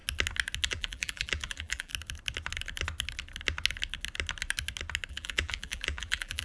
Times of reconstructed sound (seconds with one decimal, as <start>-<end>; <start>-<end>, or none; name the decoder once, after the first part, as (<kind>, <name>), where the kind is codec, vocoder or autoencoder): 0.7-1.9 (vocoder, BigVGAN v2); 5.1-6.4